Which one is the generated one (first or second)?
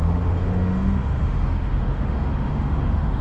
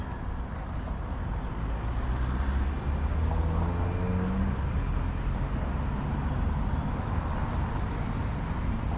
first